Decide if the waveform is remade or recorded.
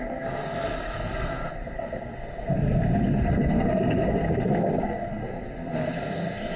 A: remade